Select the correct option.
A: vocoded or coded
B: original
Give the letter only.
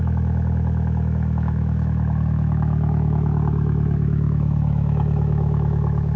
A